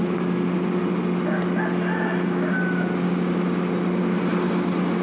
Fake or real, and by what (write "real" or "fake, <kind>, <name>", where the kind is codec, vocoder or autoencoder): real